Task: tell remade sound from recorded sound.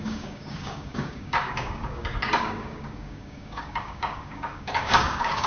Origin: remade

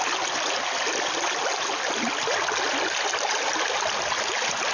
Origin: recorded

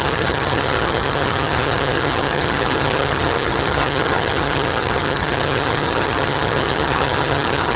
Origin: remade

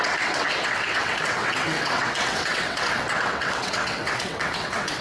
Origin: remade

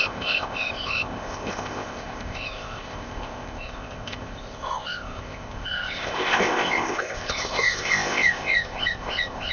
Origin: remade